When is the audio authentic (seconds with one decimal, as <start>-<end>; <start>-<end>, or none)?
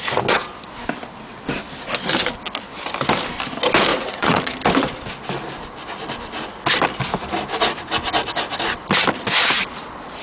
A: 0.0-3.9; 4.5-10.2